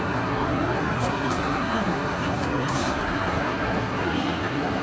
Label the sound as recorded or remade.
remade